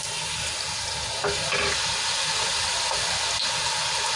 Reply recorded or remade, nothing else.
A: recorded